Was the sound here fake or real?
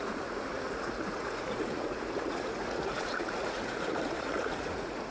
fake